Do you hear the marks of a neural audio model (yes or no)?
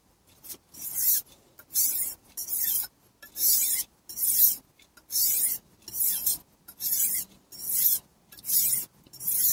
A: no